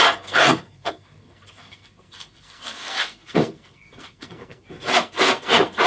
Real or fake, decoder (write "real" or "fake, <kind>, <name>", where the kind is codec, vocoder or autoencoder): fake, codec, SNAC